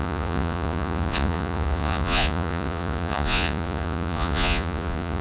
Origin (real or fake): fake